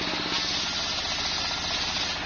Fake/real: real